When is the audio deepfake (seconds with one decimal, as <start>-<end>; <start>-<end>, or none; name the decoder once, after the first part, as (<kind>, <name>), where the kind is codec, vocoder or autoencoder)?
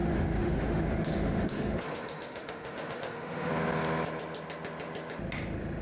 0.0-3.5 (autoencoder, DAC-VAE)